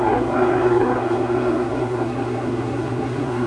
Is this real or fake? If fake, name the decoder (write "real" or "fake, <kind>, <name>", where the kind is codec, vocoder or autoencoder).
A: fake, codec, SNAC